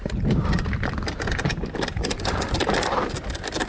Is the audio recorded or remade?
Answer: recorded